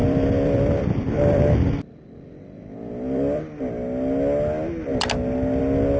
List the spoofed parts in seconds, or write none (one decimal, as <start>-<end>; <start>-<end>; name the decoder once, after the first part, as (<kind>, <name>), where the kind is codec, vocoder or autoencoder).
0.0-3.6 (vocoder, BigVGAN v2)